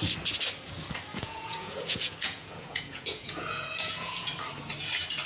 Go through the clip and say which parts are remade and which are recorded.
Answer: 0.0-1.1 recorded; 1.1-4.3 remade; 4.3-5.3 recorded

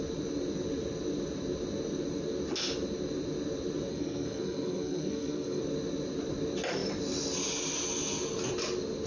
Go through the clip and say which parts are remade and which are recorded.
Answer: 0.0-3.9 recorded; 3.9-5.6 remade; 5.6-9.1 recorded